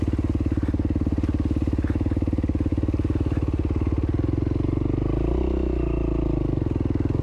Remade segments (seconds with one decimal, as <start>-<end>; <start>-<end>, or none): none